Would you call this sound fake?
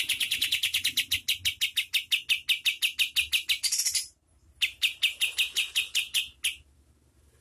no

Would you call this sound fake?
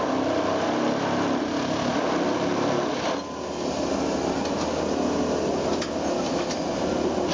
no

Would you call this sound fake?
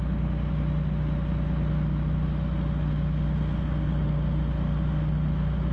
no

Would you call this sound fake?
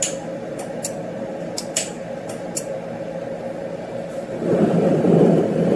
no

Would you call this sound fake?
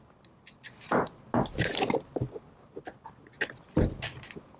no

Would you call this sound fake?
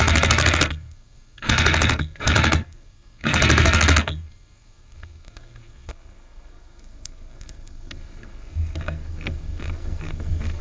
yes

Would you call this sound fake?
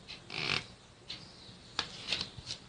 no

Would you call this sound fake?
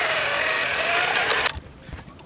yes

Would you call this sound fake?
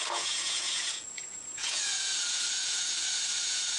yes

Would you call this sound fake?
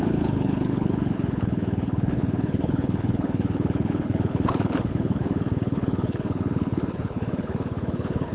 yes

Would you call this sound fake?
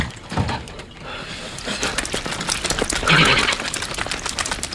no